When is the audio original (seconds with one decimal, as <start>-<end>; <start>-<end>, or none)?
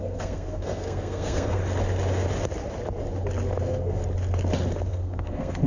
1.6-3.6; 4.0-4.9